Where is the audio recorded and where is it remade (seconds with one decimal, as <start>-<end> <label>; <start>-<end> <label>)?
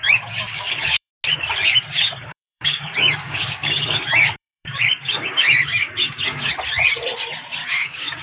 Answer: 0.0-1.1 remade; 1.1-1.7 recorded; 1.7-6.6 remade; 6.6-7.6 recorded; 7.6-8.2 remade